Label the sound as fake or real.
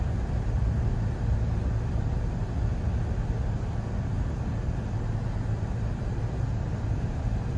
real